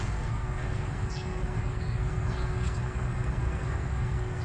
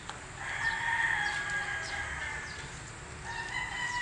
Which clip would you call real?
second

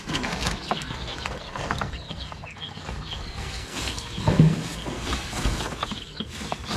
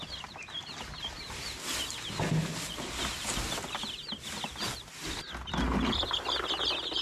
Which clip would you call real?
second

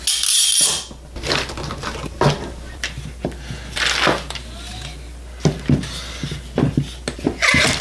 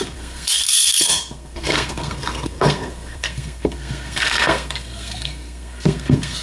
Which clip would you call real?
first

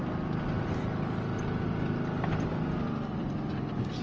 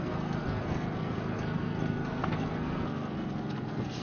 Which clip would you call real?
first